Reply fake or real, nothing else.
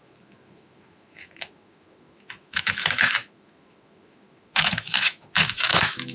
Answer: fake